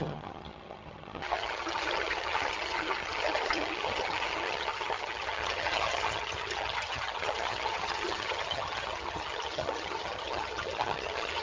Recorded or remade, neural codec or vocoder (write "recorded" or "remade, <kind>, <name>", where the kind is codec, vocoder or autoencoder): remade, vocoder, HiFi-GAN